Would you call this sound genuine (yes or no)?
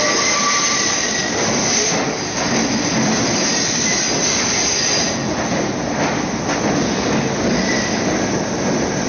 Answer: yes